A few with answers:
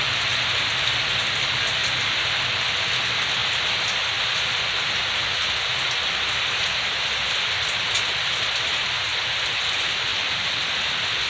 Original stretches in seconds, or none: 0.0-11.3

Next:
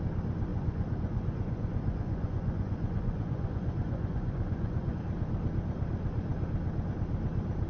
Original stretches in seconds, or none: 0.0-0.5; 5.0-7.7

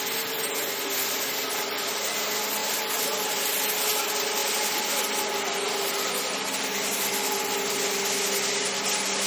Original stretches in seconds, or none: 0.0-9.3

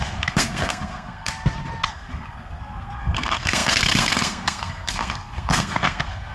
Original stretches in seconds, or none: 1.3-1.9

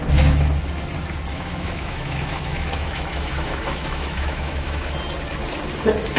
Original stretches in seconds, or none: 0.0-1.3; 4.9-6.2

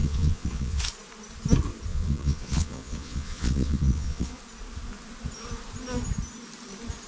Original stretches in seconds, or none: 0.8-1.9; 4.4-7.1

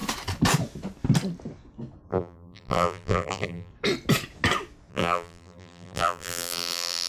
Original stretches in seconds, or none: 0.0-2.1; 3.7-4.9